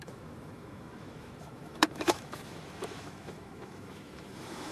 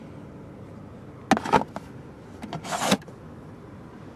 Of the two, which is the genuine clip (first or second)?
second